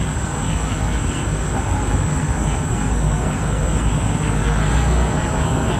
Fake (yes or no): yes